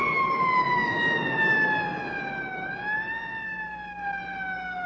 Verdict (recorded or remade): recorded